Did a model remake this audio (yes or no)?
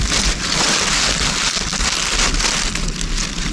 no